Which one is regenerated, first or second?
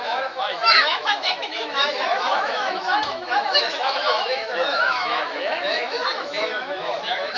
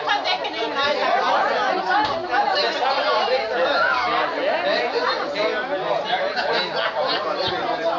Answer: first